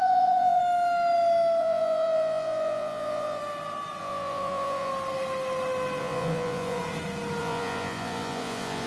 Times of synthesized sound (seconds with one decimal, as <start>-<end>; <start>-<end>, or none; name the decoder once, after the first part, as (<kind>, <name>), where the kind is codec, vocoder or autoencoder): 0.0-0.6 (vocoder, Vocos); 1.6-3.4; 4.0-4.9; 6.0-6.8; 7.4-8.9